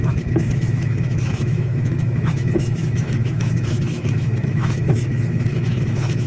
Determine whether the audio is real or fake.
fake